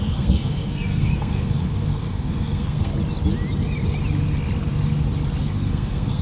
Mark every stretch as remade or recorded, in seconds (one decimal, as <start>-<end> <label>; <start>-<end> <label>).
0.0-2.9 remade; 2.9-5.4 recorded; 5.4-6.2 remade